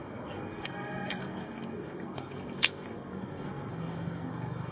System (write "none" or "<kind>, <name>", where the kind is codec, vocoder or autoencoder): codec, SNAC